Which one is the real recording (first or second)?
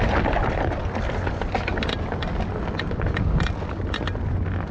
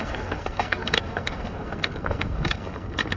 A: first